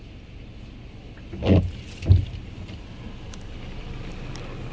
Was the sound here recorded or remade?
recorded